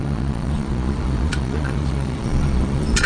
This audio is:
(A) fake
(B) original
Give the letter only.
A